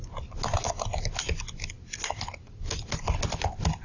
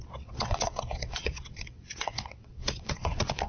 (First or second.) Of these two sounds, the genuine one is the first